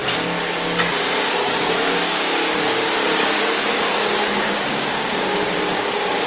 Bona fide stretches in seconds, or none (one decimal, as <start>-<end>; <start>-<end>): 0.0-1.0